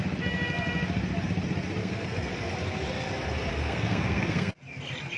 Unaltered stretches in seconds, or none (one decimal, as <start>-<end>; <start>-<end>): 0.0-1.8; 2.3-3.5; 4.5-5.2